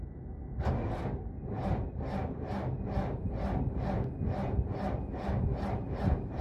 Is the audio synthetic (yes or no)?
no